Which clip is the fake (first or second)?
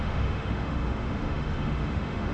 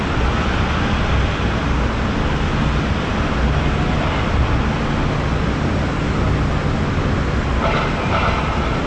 first